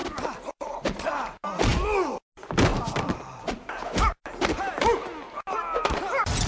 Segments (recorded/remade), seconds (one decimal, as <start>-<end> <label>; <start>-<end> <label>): 0.0-1.1 remade; 1.1-1.7 recorded; 1.7-2.3 remade; 2.3-6.5 recorded